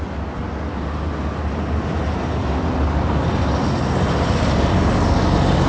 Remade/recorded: recorded